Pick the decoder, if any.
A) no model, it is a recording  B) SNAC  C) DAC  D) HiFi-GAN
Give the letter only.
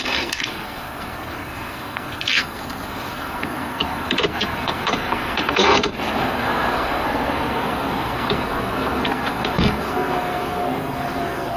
B